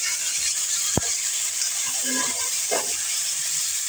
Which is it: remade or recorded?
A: remade